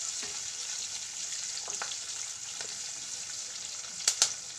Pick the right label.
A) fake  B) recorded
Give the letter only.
B